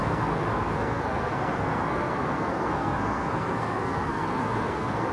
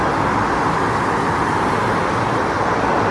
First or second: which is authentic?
second